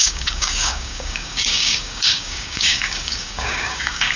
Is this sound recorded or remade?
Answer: remade